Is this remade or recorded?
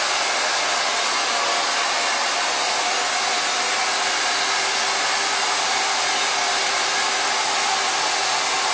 recorded